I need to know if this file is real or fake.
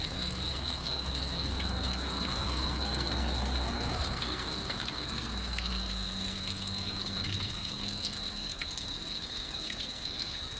fake